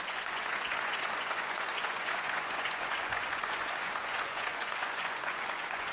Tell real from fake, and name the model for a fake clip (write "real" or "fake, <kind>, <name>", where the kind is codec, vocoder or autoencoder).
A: fake, vocoder, Vocos